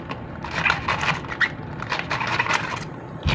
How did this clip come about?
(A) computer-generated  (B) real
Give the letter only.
B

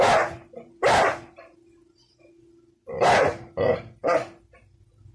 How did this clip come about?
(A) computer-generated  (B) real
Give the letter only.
B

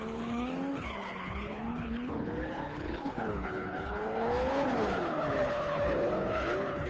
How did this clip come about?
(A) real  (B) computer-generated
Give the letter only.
B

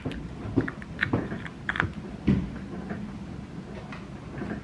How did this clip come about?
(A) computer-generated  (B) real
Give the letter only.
B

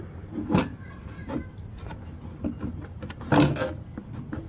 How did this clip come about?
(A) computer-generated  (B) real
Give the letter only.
B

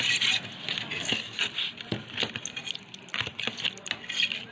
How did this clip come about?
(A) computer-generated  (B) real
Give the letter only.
B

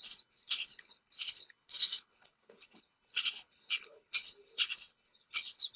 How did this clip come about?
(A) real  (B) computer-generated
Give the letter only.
B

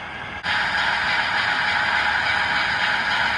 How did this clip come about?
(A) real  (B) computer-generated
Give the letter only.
A